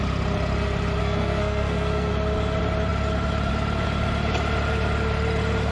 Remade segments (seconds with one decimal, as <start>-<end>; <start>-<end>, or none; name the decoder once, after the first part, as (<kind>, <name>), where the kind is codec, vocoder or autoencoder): 1.0-2.1 (codec, SNAC)